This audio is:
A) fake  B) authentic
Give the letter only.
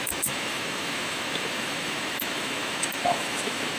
A